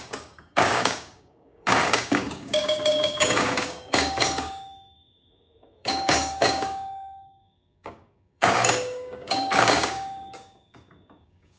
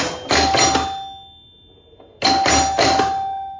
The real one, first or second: second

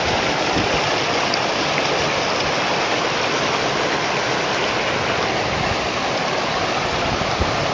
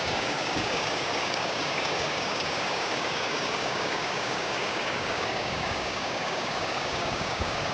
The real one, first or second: first